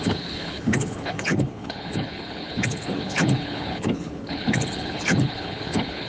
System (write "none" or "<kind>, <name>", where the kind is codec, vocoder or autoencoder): codec, HILCodec